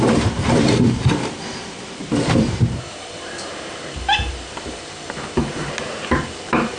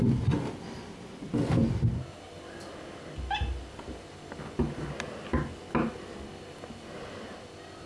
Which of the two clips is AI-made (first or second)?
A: first